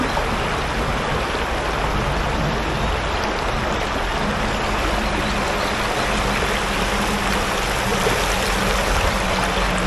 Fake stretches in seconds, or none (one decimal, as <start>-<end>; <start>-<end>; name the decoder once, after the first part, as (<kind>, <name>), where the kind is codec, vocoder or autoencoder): none